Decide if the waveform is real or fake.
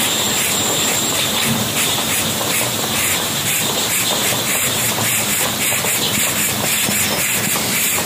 fake